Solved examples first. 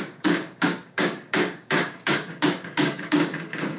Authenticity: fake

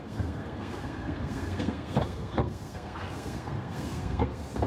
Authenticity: fake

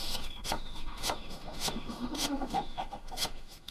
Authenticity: fake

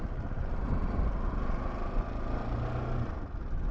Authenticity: real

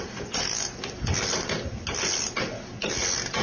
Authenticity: real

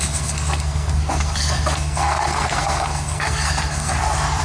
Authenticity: fake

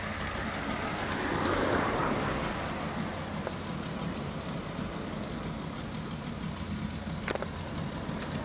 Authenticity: real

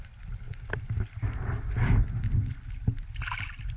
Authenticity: real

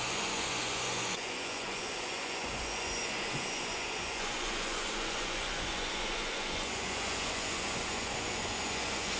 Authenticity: fake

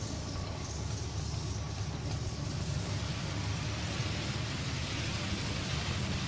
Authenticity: real